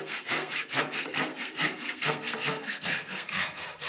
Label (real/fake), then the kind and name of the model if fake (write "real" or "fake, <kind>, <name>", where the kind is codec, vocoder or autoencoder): fake, codec, SNAC